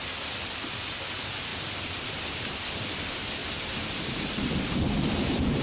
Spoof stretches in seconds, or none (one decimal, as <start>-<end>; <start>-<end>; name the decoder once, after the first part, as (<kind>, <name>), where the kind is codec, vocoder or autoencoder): 1.5-2.2 (vocoder, BigVGAN v2); 3.4-4.5